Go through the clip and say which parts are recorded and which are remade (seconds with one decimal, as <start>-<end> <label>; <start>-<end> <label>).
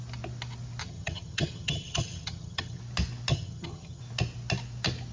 0.0-0.8 recorded; 0.8-2.8 remade; 2.8-3.3 recorded; 3.3-4.0 remade; 4.0-5.1 recorded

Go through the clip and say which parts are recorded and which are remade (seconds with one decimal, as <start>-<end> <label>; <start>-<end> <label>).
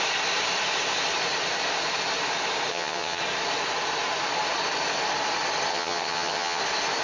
0.0-2.7 recorded; 2.7-3.2 remade; 3.2-5.7 recorded; 5.7-6.6 remade; 6.6-7.0 recorded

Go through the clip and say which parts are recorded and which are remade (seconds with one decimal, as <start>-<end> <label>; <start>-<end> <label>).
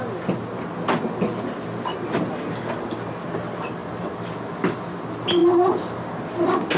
0.0-6.8 recorded